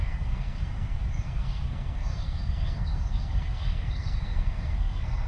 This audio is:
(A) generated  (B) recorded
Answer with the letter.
A